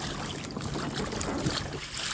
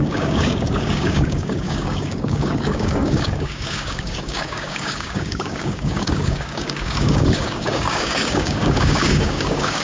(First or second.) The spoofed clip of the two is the second